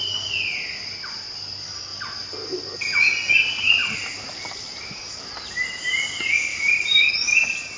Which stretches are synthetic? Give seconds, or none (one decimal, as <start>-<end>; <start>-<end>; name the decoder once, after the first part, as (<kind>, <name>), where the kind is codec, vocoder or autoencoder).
3.8-5.2 (vocoder, BigVGAN v2); 6.5-7.1

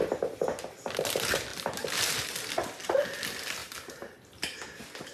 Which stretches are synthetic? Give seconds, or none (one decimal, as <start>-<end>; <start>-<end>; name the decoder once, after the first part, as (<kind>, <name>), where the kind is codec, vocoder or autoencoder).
3.6-4.6 (vocoder, BigVGAN v2)

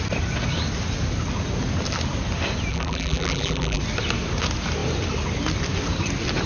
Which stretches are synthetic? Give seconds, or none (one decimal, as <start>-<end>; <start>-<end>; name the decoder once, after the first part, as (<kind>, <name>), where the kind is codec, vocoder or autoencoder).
2.7-3.8 (vocoder, BigVGAN v2)

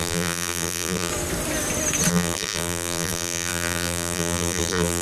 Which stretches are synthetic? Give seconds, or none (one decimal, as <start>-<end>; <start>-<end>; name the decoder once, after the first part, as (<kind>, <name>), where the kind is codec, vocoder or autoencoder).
0.0-1.1 (vocoder, BigVGAN v2); 2.1-5.0

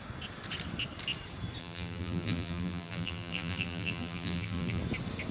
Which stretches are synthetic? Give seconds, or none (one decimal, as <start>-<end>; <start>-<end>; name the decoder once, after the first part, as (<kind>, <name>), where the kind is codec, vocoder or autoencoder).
1.6-4.8 (vocoder, BigVGAN v2)

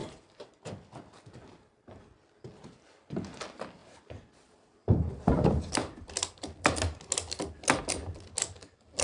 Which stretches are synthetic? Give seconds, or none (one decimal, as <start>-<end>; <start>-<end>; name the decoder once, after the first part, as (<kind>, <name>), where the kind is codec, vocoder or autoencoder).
0.0-0.6 (vocoder, BigVGAN v2); 3.8-5.3